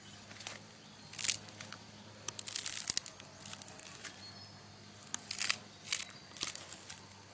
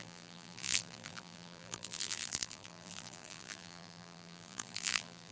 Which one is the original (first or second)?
first